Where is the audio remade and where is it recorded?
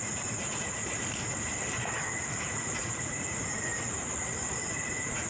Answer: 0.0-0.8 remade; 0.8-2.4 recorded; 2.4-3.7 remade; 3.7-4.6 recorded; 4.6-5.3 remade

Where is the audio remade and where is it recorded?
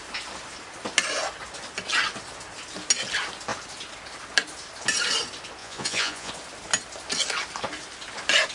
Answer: 0.0-5.6 recorded; 5.6-6.3 remade; 6.3-8.5 recorded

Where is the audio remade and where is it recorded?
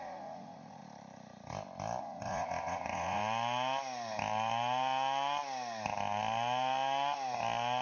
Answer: 0.0-0.8 remade; 0.8-2.0 recorded; 2.0-3.2 remade; 3.2-7.8 recorded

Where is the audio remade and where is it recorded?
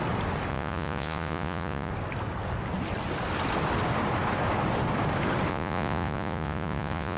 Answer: 0.0-0.5 recorded; 0.5-1.9 remade; 1.9-5.5 recorded; 5.5-7.2 remade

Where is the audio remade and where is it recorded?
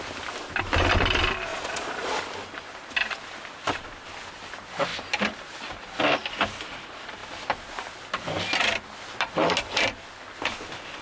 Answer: 0.0-1.5 recorded; 1.5-2.2 remade; 2.2-11.0 recorded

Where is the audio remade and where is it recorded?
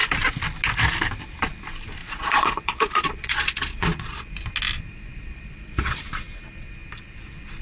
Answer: 0.0-2.0 recorded; 2.0-4.3 remade; 4.3-4.9 recorded; 4.9-6.0 remade; 6.0-7.6 recorded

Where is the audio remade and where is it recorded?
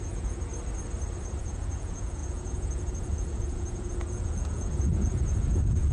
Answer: 0.0-0.5 remade; 0.5-1.4 recorded; 1.4-5.9 remade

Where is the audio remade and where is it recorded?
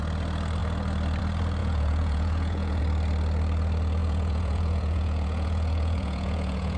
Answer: 0.0-1.6 recorded; 1.6-2.8 remade; 2.8-4.0 recorded; 4.0-6.8 remade